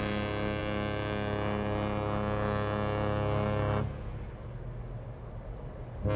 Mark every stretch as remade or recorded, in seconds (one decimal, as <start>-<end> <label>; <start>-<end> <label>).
0.0-6.2 recorded